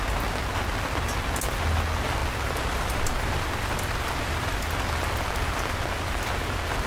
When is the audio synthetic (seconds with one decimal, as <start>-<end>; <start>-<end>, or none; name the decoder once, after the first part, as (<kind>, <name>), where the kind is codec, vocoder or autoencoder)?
2.2-4.6 (vocoder, BigVGAN v2)